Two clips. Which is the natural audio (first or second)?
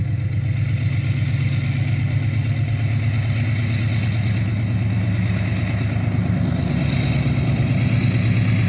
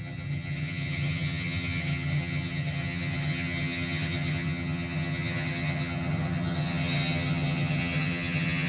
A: first